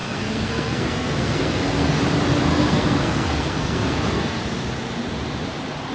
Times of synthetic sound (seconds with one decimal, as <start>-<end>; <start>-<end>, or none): 0.0-2.0; 2.5-4.4